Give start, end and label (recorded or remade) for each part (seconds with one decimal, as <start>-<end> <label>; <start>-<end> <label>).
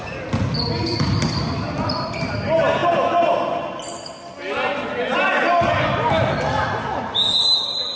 0.0-8.0 recorded